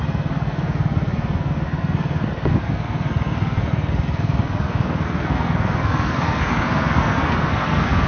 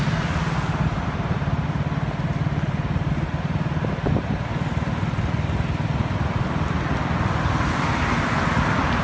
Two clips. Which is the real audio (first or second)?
second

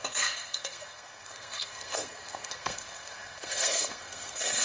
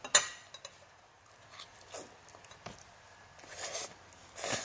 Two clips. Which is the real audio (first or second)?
second